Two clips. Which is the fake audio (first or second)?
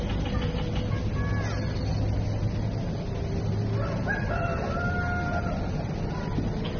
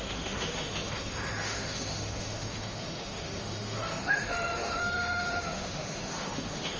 second